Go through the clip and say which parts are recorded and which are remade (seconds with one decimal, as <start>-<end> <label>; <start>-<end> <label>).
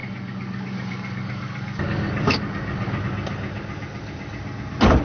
0.0-3.0 remade; 3.0-5.0 recorded